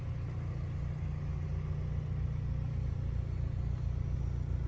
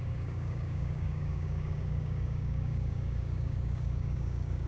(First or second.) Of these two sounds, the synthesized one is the second